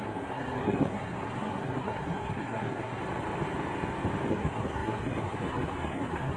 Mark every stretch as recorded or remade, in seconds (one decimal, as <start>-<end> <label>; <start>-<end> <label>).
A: 0.0-3.0 remade; 3.0-4.3 recorded; 4.3-6.4 remade